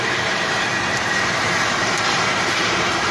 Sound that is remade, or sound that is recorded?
remade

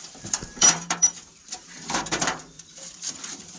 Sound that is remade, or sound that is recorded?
remade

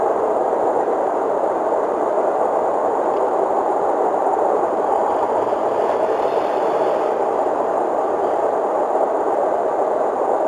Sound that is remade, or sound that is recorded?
remade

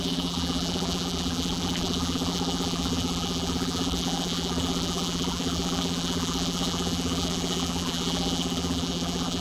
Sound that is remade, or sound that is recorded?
remade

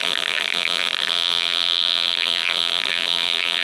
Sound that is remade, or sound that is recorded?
remade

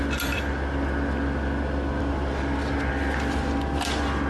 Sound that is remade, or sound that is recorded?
remade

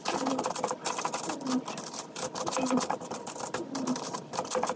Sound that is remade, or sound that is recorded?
remade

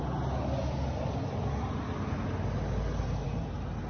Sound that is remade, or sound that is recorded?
recorded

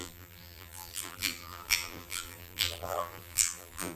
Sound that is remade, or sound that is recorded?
remade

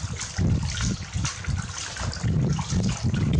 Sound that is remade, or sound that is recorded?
recorded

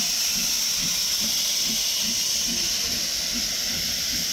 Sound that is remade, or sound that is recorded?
recorded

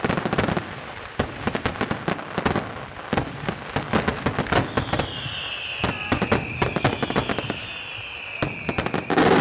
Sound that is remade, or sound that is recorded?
recorded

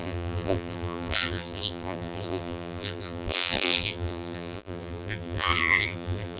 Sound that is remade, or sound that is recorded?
remade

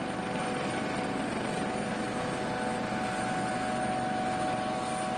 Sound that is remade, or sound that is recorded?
recorded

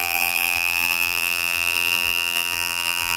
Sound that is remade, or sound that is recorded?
remade